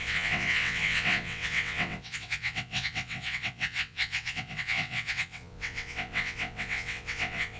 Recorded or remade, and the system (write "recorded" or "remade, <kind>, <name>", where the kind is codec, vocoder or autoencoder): remade, vocoder, WaveNeXt